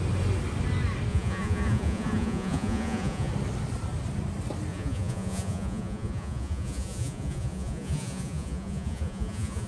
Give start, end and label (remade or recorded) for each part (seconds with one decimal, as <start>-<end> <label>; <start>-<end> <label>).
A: 0.0-1.1 recorded; 1.1-3.3 remade; 3.3-4.7 recorded; 4.7-9.7 remade